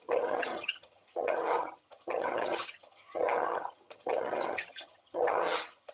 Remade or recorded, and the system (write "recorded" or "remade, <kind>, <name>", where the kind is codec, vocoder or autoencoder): remade, vocoder, HiFi-GAN